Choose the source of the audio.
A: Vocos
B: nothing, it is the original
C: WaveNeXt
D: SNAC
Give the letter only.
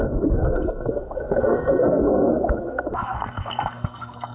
D